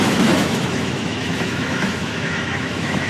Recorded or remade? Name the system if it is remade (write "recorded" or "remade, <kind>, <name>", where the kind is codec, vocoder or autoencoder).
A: remade, autoencoder, DAC-VAE